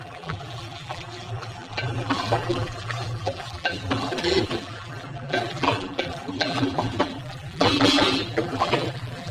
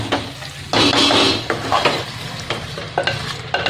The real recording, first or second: second